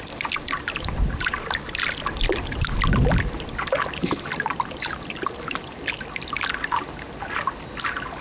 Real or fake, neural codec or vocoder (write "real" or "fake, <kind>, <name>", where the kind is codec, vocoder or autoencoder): real